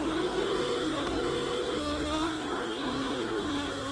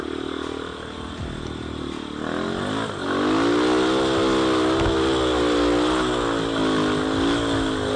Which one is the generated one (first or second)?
first